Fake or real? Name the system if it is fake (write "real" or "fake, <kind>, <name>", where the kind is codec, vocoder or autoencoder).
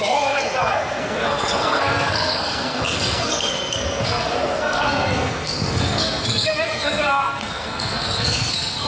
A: fake, codec, SNAC